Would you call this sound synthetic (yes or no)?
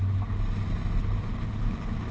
no